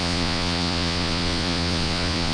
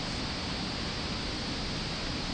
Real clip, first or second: second